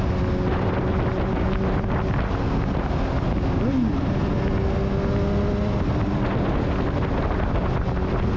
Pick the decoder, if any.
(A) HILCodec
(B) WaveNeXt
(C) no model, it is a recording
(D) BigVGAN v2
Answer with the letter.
C